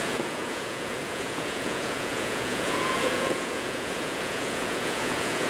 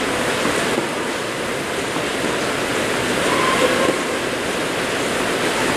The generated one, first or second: first